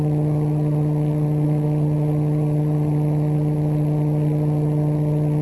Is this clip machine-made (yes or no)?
no